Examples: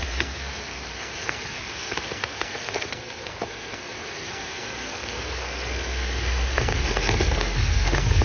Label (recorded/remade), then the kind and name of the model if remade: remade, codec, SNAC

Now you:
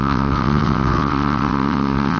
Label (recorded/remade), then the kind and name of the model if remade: remade, vocoder, WaveNeXt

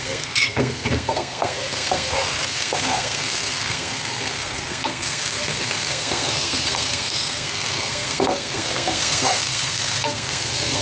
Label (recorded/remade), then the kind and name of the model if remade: remade, codec, SNAC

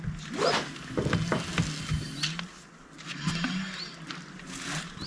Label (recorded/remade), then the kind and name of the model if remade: recorded